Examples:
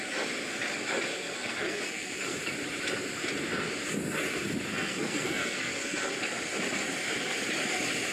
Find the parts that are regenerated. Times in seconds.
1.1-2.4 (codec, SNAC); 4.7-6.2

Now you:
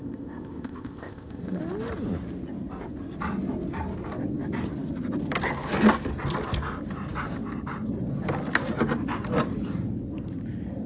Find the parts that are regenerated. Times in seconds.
0.0-1.6 (codec, ZipCodec)

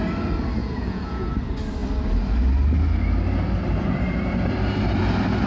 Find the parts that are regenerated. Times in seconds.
0.6-1.3 (vocoder, Vocos)

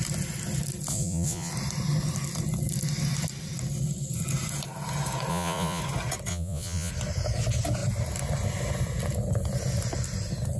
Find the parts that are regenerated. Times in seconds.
0.9-1.5 (vocoder, Vocos); 5.3-5.8; 6.3-6.9

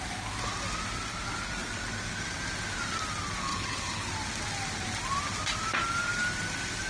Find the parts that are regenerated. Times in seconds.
3.5-4.1 (codec, HILCodec)